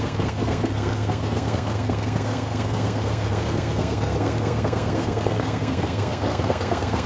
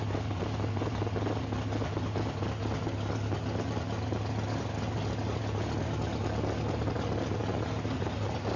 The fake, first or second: first